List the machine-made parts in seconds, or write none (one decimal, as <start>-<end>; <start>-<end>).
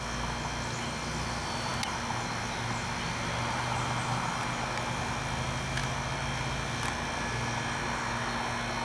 none